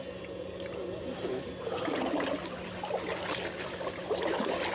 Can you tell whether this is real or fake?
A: real